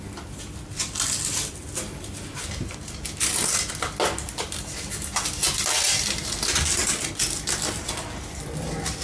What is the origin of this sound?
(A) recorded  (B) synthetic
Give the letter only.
A